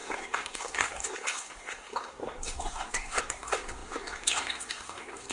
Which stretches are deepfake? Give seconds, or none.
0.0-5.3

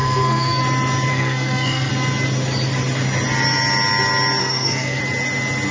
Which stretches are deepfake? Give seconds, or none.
0.0-0.6; 1.1-1.9; 4.4-5.0

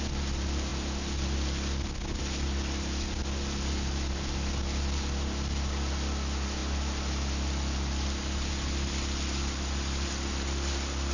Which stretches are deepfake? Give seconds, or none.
none

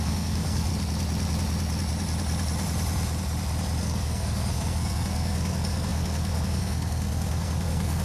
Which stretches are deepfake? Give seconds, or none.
0.0-0.7; 3.8-8.0

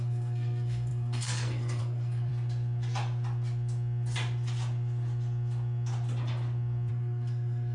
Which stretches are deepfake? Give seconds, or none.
0.0-2.3; 6.9-7.7

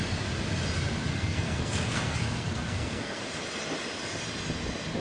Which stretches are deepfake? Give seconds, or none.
1.1-3.2